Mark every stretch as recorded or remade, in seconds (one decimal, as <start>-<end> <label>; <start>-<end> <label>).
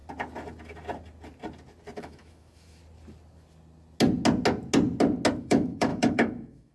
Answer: 0.0-2.0 recorded; 2.0-2.8 remade; 2.8-5.4 recorded; 5.4-6.7 remade